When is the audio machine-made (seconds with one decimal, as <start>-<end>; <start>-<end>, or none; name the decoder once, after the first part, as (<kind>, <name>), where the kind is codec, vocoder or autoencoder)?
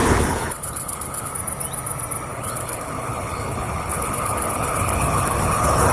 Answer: 0.0-1.3 (codec, HILCodec); 2.3-5.9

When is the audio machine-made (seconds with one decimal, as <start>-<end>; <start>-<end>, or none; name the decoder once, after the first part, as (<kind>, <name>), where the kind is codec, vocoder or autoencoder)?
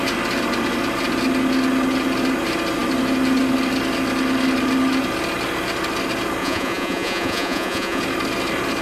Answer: 6.4-8.0 (vocoder, Vocos)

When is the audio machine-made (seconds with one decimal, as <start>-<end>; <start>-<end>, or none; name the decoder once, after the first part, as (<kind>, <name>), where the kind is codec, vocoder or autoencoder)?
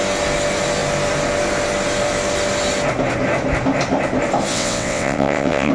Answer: 4.5-5.7 (vocoder, WaveNeXt)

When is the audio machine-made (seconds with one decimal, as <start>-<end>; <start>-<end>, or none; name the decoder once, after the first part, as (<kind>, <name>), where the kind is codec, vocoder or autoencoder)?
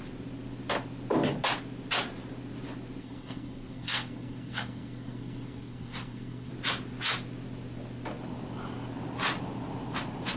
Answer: 3.0-6.5 (codec, SNAC)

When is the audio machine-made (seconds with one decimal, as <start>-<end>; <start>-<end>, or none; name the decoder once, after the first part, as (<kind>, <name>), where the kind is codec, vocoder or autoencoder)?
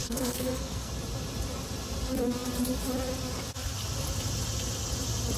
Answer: 0.0-0.9 (codec, SNAC)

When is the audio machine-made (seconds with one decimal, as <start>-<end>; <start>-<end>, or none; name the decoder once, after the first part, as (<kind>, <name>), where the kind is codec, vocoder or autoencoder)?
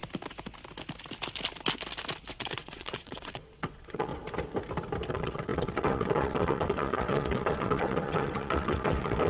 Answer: 2.3-4.1 (vocoder, WaveNeXt); 5.1-9.3